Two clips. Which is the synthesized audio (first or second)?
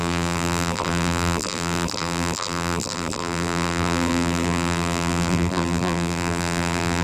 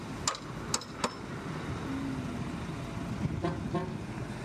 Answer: first